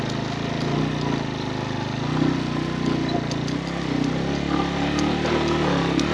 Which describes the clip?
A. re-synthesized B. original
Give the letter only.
B